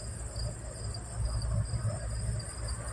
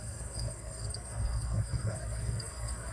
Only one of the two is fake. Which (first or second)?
second